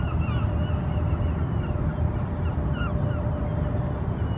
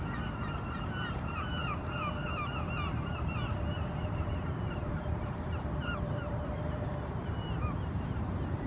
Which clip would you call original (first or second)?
first